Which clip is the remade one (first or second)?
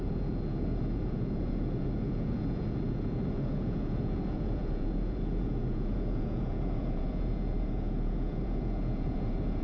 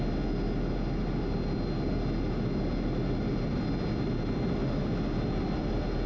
first